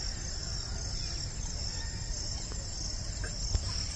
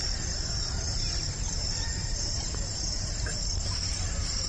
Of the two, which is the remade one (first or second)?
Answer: second